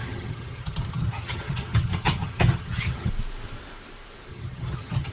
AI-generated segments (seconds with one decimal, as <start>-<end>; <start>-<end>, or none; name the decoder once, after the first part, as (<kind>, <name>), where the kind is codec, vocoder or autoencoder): 0.0-3.1 (vocoder, HiFi-GAN); 4.3-5.1